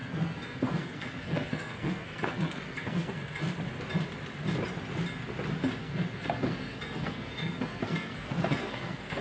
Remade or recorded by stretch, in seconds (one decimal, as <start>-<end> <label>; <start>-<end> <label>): 0.0-3.4 remade; 3.4-5.8 recorded; 5.8-9.2 remade